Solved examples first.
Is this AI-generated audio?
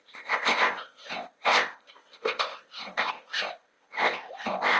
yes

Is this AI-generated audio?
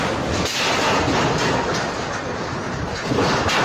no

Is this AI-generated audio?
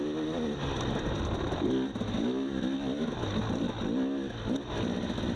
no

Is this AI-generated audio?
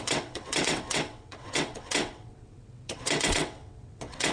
yes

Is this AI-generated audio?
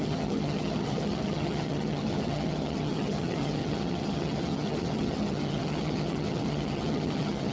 yes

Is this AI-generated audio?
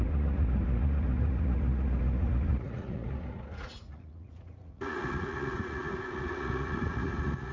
yes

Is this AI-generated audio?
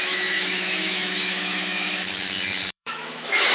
yes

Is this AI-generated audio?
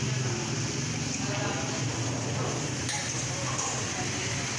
no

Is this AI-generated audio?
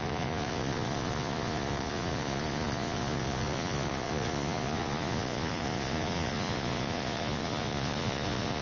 yes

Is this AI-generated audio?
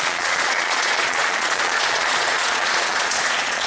yes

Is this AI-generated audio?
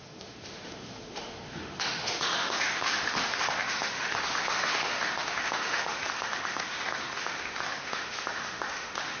yes